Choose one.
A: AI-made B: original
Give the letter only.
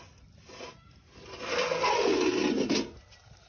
B